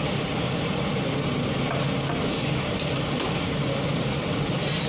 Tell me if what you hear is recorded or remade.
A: recorded